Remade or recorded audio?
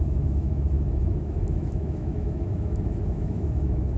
remade